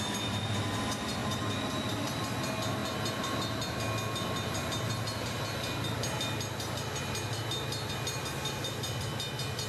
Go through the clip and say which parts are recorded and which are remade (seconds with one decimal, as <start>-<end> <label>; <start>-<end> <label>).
0.0-1.2 recorded; 1.2-2.4 remade; 2.4-9.1 recorded; 9.1-9.7 remade